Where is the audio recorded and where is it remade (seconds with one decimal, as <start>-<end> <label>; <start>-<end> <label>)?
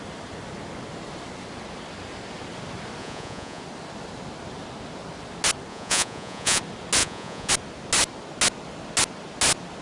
0.0-3.0 recorded; 3.0-3.6 remade; 3.6-5.7 recorded; 5.7-6.6 remade; 6.6-7.0 recorded; 7.0-7.5 remade; 7.5-9.8 recorded